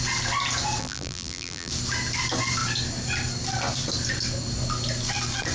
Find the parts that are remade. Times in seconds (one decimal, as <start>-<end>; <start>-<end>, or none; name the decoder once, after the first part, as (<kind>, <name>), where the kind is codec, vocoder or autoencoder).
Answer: 0.8-1.7 (vocoder, BigVGAN v2)